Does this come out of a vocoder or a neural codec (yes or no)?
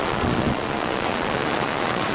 yes